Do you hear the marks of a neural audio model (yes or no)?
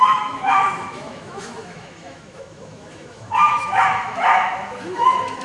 yes